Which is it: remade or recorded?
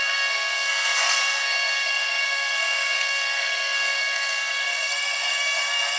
remade